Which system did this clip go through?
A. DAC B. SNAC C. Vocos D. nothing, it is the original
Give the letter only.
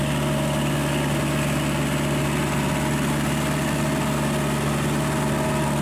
D